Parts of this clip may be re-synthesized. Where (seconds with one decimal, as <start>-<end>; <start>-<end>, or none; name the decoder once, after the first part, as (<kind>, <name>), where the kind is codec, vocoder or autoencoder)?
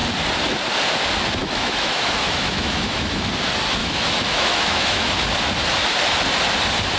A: 1.4-3.3 (autoencoder, DAC-VAE); 3.8-5.1